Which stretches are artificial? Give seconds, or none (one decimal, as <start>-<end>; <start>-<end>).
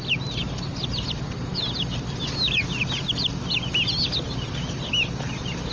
none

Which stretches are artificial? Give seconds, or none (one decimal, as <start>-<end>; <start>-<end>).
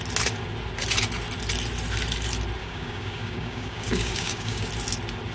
2.6-4.7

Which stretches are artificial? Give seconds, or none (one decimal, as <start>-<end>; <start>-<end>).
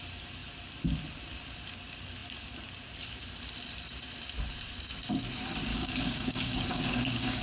5.7-7.4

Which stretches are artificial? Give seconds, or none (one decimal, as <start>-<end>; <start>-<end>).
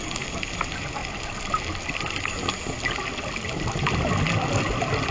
none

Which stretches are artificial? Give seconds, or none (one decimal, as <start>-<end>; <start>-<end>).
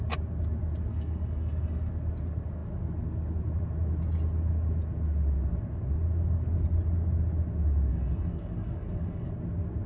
0.9-1.9; 7.9-9.3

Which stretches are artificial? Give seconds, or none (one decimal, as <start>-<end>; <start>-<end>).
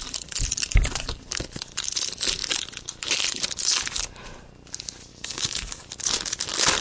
5.1-5.8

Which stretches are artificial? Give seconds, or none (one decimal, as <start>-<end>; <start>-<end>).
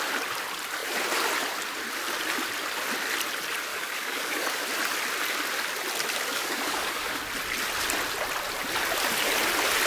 3.7-4.6; 6.3-7.2